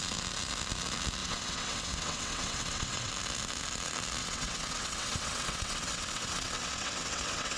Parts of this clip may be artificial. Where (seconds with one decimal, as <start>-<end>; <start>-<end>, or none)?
1.2-3.1; 4.2-7.6